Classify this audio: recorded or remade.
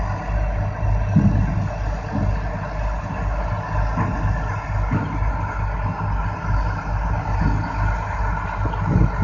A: recorded